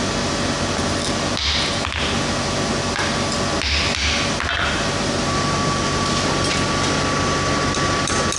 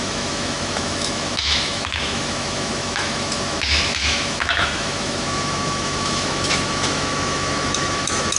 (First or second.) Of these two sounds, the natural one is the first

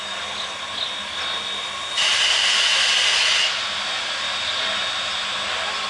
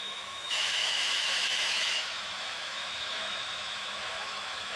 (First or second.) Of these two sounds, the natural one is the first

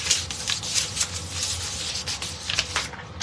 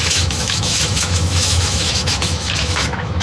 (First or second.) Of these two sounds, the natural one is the first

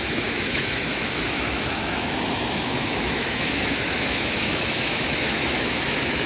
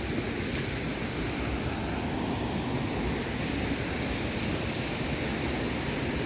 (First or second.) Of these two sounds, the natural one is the second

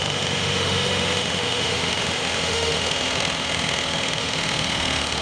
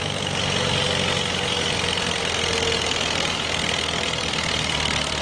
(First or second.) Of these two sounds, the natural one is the second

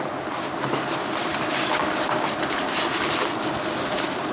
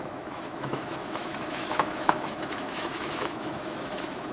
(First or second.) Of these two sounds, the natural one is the first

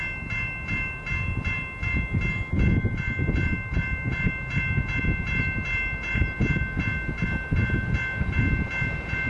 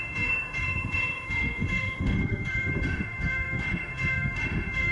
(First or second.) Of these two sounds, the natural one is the first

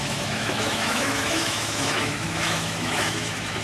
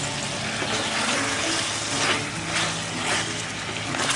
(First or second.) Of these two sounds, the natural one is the second